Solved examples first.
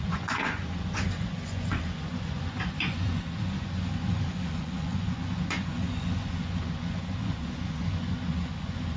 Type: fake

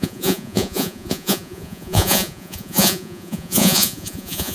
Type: fake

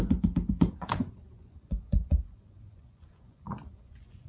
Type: fake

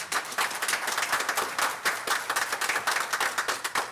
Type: real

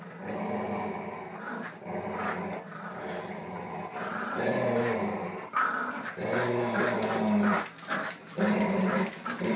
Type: real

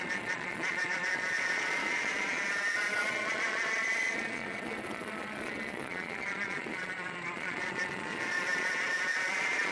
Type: fake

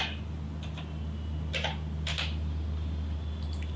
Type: real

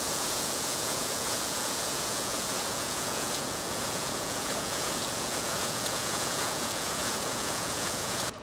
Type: fake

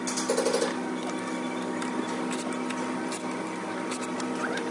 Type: real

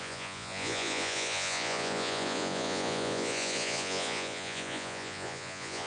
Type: fake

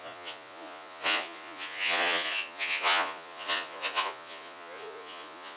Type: fake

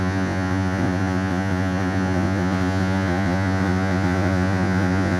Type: fake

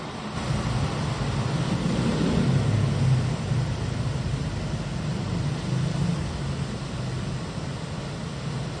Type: real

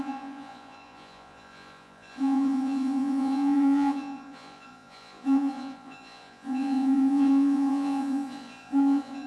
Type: fake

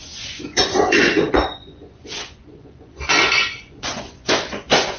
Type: fake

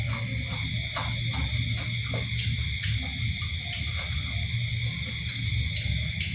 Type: real